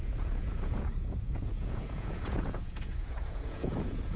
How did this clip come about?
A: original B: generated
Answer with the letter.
B